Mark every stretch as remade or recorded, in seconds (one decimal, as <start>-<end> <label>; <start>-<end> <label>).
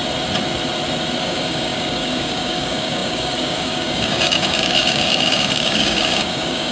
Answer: 0.0-1.2 recorded; 1.2-6.7 remade